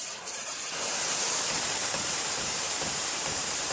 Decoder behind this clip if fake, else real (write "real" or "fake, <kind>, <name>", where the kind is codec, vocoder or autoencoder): fake, vocoder, BigVGAN v2